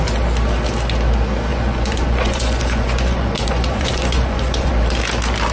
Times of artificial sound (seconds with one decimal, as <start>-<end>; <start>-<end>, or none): 1.5-4.7